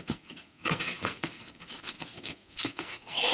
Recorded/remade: remade